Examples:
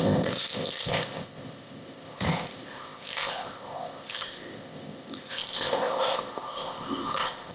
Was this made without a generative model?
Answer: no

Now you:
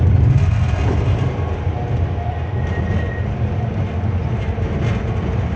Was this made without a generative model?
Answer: yes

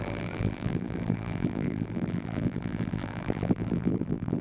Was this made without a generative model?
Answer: no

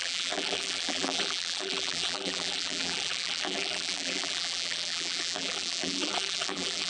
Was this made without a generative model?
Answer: no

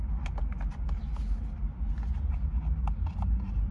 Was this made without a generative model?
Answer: yes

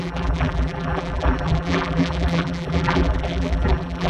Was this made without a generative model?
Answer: no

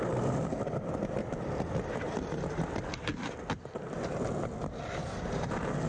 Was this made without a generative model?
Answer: yes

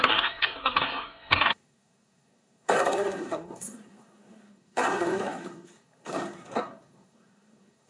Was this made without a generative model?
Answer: no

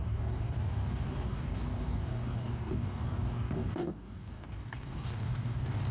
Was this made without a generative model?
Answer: no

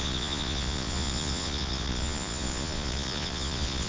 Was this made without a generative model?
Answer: no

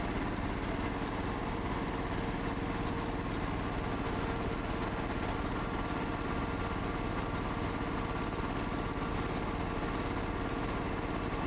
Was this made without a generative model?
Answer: yes